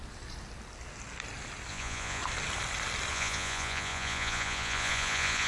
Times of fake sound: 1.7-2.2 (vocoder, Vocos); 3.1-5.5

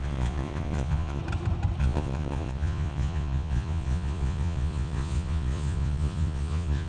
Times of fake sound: 0.0-1.2 (vocoder, Vocos); 1.8-6.9